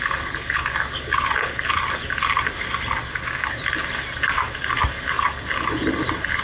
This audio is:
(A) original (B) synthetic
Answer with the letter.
A